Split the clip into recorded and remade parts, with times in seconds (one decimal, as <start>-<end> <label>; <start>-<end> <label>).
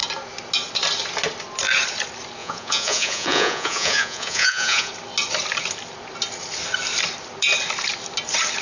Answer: 0.0-2.4 recorded; 2.4-4.9 remade; 4.9-8.6 recorded